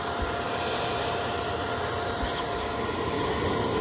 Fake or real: real